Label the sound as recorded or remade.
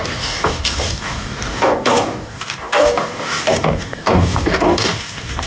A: remade